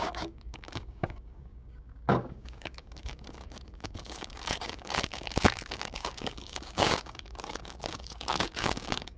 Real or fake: fake